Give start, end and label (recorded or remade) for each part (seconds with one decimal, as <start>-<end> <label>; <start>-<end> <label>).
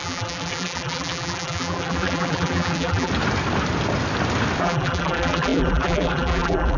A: 0.0-3.1 remade; 3.1-4.6 recorded; 4.6-6.8 remade